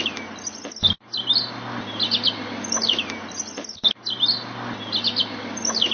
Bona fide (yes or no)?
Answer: yes